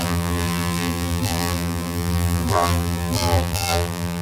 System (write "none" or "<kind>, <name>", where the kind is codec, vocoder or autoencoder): vocoder, BigVGAN v2